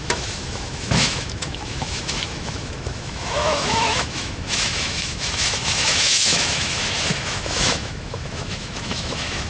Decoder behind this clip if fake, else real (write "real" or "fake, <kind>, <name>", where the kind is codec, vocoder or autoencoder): fake, autoencoder, DAC-VAE